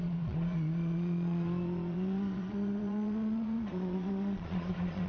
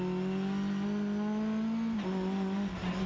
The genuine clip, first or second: second